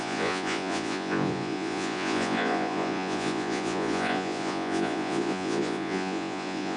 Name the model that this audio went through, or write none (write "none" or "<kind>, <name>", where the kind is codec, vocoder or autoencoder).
vocoder, Vocos